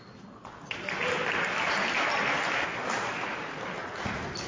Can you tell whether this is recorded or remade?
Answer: recorded